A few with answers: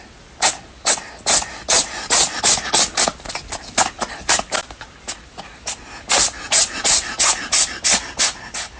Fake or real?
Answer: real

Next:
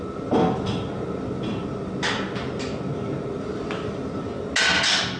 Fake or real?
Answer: real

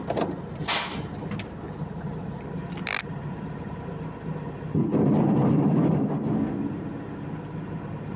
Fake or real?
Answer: real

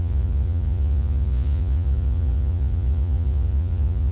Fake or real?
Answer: fake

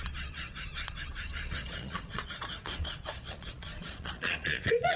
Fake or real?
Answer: fake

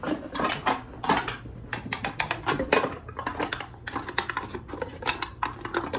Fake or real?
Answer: real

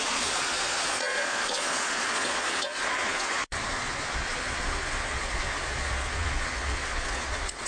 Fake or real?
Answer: fake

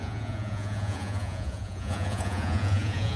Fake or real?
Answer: fake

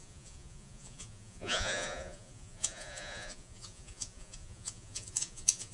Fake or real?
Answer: fake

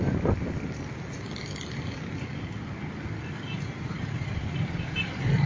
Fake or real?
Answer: real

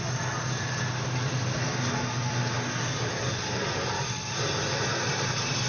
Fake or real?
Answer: real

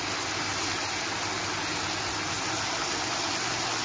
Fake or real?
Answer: real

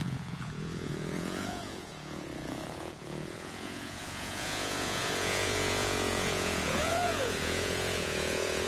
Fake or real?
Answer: fake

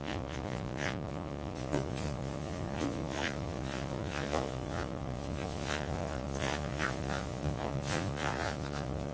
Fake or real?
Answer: fake